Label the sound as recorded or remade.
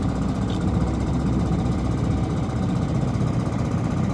remade